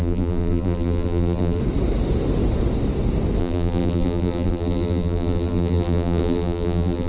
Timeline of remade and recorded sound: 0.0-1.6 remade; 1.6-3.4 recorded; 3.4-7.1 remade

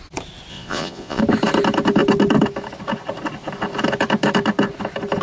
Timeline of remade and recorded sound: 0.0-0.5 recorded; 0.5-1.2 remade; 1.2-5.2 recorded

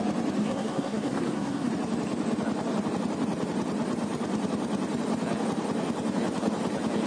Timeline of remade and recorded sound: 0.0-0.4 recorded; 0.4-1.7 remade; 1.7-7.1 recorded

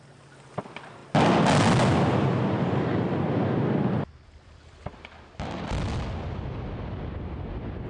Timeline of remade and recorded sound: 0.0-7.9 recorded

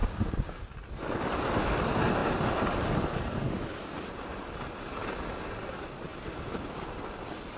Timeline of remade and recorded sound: 0.0-0.6 remade; 0.6-7.6 recorded

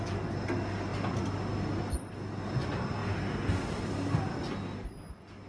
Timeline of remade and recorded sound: 0.0-5.5 recorded

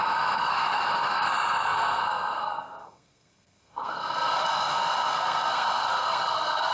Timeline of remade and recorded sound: 0.0-6.7 remade